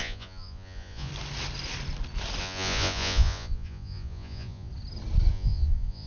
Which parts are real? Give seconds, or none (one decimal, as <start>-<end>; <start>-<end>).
1.1-2.4; 4.7-5.3